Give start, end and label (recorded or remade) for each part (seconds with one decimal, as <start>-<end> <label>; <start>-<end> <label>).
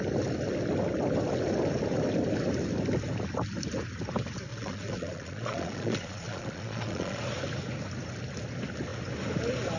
0.0-4.5 recorded; 4.5-7.2 remade; 7.2-9.8 recorded